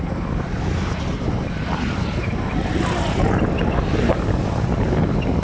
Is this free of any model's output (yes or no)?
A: yes